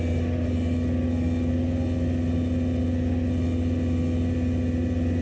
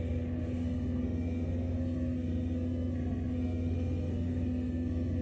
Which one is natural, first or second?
first